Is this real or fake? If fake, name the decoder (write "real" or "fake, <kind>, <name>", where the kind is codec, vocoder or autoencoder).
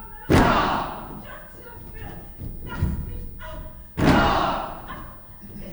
real